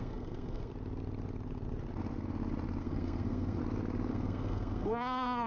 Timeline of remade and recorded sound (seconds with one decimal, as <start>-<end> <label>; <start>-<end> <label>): 0.0-0.7 remade; 0.7-2.8 recorded; 2.8-3.6 remade; 3.6-4.1 recorded; 4.1-5.5 remade